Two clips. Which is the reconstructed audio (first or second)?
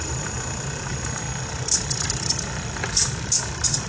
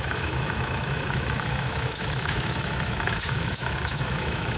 second